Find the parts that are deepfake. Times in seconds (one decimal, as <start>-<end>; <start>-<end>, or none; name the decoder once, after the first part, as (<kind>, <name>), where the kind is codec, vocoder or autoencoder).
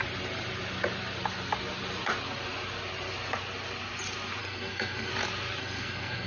4.4-5.1 (codec, SNAC); 5.6-6.3